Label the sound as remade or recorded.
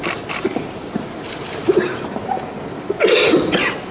recorded